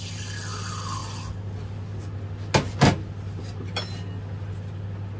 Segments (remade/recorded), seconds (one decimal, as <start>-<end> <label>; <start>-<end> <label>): 0.0-5.2 recorded